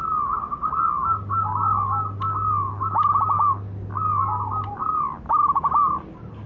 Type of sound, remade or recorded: recorded